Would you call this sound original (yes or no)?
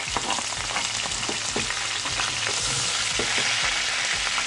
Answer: yes